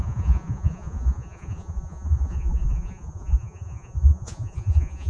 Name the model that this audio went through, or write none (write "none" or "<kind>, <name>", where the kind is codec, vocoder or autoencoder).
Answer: vocoder, Vocos